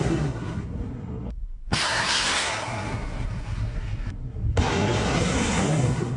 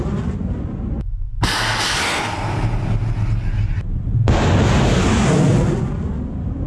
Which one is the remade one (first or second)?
first